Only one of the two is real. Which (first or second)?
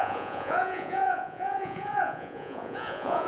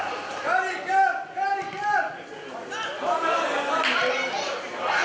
second